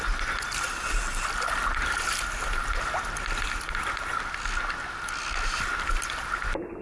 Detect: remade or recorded recorded